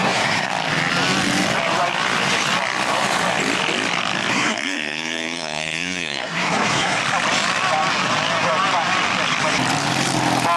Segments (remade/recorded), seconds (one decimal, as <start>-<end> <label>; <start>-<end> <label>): 0.0-0.5 remade; 0.5-4.3 recorded; 4.3-7.0 remade; 7.0-10.6 recorded